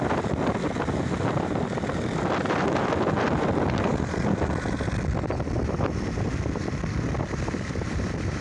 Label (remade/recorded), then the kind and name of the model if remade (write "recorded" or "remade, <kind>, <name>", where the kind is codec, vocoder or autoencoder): remade, vocoder, BigVGAN v2